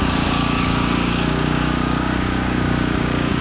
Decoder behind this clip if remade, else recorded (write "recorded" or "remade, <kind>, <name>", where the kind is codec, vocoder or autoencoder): remade, codec, DAC